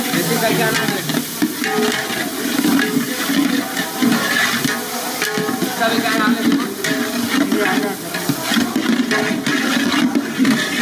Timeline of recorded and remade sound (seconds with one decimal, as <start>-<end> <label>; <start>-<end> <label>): 0.0-8.9 recorded; 8.9-9.7 remade; 9.7-10.8 recorded